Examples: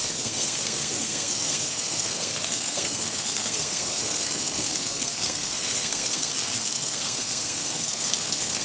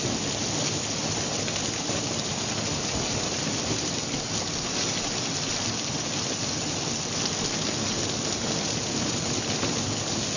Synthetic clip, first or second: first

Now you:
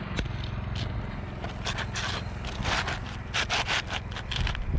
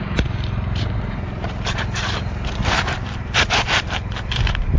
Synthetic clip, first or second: second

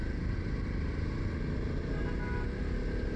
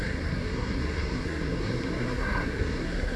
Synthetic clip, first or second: second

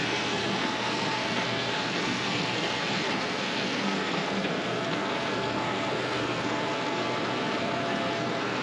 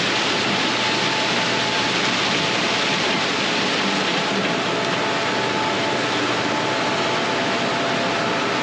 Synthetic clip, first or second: first